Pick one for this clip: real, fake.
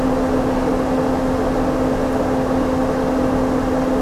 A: real